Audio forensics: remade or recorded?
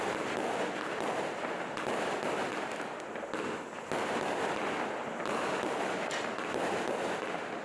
recorded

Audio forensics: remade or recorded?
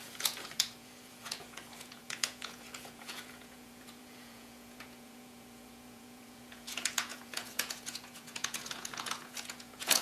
remade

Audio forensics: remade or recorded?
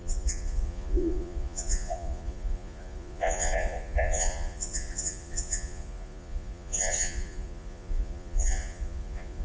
remade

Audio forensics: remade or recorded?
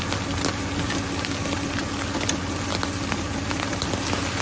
recorded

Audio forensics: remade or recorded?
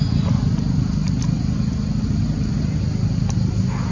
recorded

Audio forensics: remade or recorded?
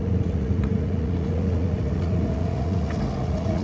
remade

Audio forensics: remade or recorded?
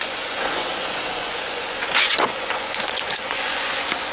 remade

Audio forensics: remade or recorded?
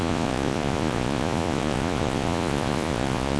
remade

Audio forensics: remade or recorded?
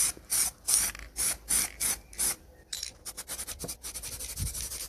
recorded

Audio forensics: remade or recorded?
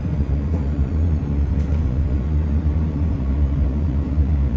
remade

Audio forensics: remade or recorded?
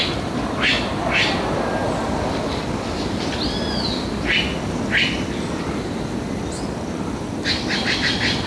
recorded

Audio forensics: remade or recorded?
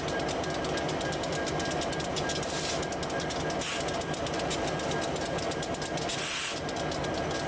recorded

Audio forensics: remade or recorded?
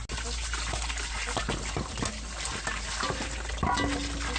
recorded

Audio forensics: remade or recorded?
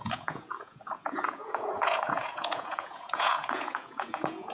remade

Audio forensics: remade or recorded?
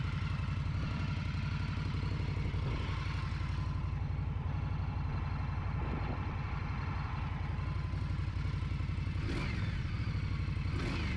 recorded